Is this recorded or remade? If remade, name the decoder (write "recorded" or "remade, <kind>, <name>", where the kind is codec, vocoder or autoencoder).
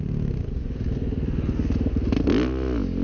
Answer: recorded